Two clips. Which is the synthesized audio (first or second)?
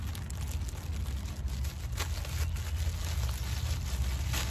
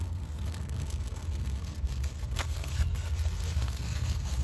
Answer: second